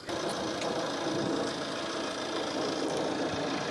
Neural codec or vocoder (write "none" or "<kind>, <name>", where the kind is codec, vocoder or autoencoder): none